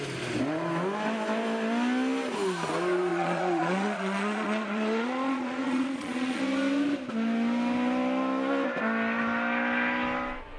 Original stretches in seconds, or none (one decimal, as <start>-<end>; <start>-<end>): 0.0-3.1; 6.4-10.6